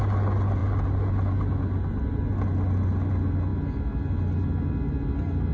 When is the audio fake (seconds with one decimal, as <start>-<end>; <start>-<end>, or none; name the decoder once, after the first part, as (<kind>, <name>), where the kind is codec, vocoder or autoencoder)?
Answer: none